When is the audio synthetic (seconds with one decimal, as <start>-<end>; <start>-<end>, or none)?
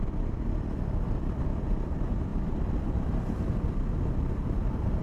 none